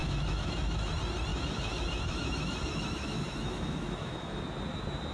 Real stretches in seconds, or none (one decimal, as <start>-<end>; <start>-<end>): 0.9-1.3; 4.4-5.1